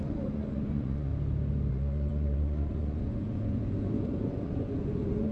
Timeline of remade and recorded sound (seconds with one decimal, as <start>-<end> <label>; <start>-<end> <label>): 0.0-1.1 remade; 1.1-1.7 recorded; 1.7-5.3 remade